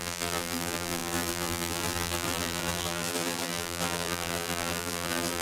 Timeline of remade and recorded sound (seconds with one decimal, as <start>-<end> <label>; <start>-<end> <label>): 0.0-5.4 remade